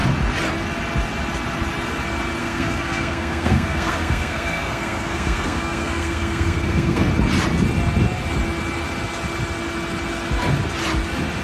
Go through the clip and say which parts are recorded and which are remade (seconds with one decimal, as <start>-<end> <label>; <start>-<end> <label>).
0.0-2.4 recorded; 2.4-7.1 remade; 7.1-11.4 recorded